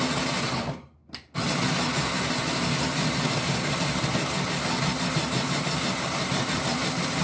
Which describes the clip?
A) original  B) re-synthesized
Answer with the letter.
A